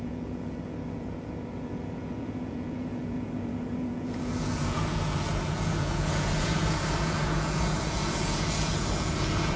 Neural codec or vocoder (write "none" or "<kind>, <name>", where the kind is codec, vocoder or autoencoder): vocoder, Vocos